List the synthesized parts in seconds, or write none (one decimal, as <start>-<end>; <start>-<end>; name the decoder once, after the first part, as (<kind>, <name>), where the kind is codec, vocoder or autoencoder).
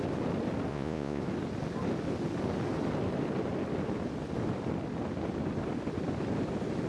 0.7-1.2 (vocoder, Vocos)